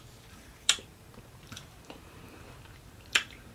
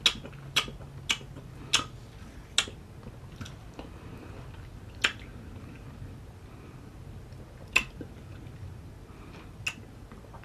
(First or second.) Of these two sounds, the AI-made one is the first